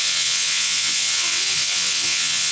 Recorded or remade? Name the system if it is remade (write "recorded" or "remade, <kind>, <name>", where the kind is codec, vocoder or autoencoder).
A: remade, vocoder, WaveNeXt